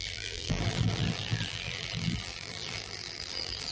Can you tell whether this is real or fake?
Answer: fake